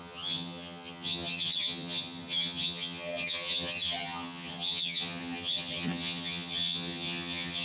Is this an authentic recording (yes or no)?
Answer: no